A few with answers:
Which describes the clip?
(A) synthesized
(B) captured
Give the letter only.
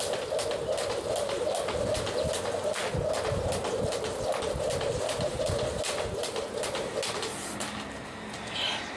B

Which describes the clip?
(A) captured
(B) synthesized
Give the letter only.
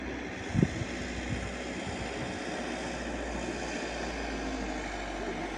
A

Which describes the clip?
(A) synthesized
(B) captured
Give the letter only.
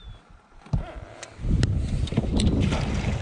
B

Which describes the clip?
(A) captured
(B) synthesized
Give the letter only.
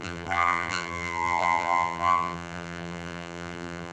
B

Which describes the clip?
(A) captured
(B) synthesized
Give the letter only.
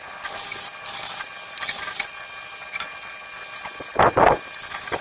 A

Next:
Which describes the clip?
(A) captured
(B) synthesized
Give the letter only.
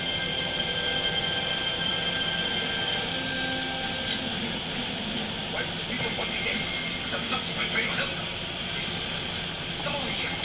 A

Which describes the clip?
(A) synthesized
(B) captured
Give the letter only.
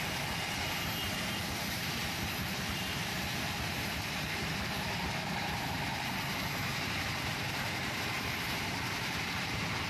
A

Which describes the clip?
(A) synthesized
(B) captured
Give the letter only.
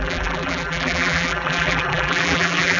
A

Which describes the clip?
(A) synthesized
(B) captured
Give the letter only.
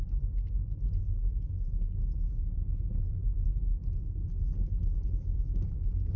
B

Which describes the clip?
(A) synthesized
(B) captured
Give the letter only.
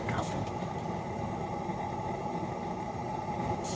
A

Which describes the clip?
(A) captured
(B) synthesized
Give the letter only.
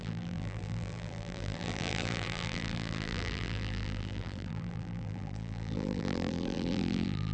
B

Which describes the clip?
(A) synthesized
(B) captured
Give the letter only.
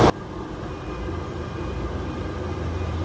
A